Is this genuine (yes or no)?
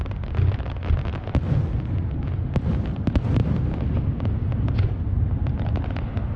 yes